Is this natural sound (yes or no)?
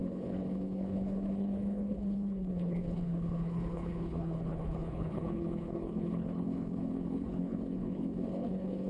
no